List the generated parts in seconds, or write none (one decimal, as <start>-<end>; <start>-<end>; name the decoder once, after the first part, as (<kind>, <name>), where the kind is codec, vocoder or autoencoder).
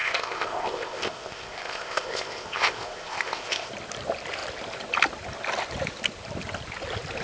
0.0-3.7 (codec, ZipCodec)